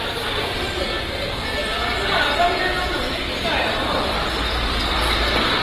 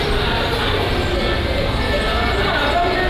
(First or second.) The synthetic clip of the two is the first